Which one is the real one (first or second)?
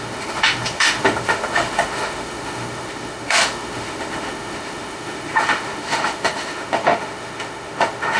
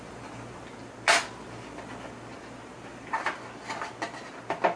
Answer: second